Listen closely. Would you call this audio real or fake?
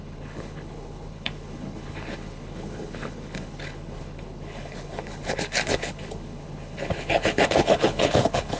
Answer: fake